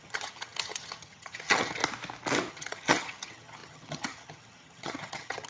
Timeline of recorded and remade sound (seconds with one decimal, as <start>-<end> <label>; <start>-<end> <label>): 0.0-1.8 remade; 1.8-2.5 recorded; 2.5-5.5 remade